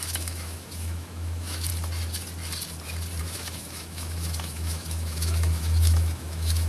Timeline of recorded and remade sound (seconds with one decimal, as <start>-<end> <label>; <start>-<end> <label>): 0.0-1.7 remade; 1.7-3.2 recorded; 3.2-6.7 remade